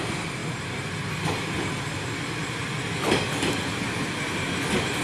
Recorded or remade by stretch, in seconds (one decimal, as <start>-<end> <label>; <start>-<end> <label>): 0.0-5.0 recorded